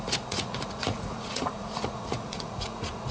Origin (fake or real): fake